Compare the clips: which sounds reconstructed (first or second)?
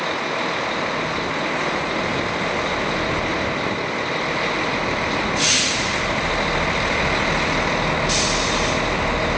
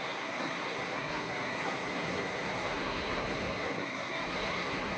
second